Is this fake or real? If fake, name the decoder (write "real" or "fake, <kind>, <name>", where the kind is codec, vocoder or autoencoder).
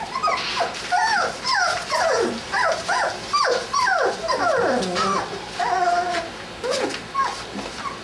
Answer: real